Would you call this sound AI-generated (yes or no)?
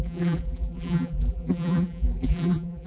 yes